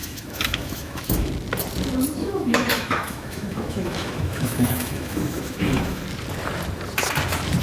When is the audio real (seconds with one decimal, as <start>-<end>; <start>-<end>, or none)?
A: 1.3-2.2; 6.0-7.6